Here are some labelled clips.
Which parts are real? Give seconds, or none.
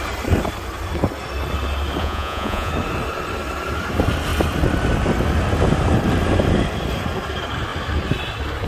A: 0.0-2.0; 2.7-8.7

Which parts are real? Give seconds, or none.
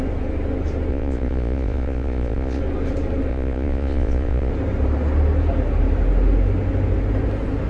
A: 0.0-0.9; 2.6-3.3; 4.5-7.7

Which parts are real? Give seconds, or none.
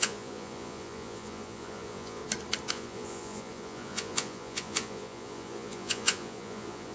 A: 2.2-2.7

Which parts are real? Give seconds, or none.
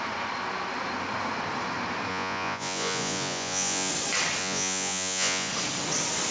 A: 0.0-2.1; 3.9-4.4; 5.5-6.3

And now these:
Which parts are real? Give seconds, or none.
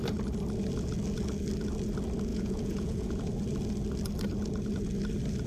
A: 0.0-2.3; 3.2-5.5